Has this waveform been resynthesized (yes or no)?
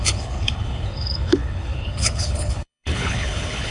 yes